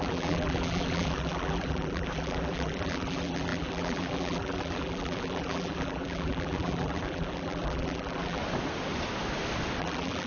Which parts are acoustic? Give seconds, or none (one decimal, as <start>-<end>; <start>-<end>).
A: 8.4-9.8